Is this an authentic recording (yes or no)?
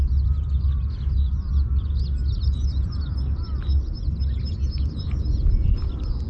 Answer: yes